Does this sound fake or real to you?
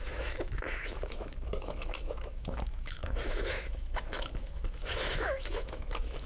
fake